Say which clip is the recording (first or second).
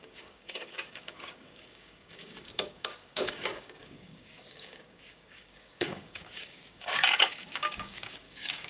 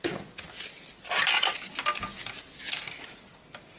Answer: second